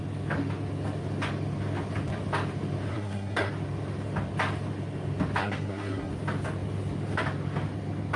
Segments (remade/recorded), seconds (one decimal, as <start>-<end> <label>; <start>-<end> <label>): 0.0-2.9 recorded; 2.9-3.5 remade; 3.5-5.4 recorded; 5.4-6.1 remade; 6.1-8.2 recorded